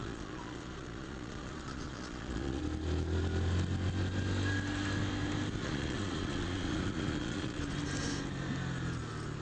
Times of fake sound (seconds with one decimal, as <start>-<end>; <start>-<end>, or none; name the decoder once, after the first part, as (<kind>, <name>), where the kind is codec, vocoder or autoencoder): 0.0-2.6 (vocoder, Vocos); 5.6-7.6